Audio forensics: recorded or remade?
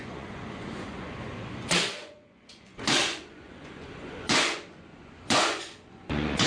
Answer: remade